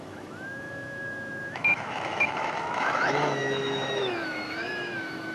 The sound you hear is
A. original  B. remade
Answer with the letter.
B